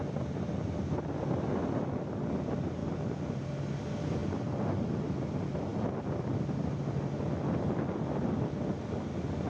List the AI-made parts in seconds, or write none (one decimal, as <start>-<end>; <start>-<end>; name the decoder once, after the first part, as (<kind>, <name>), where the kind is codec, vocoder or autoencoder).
2.8-3.4 (vocoder, BigVGAN v2)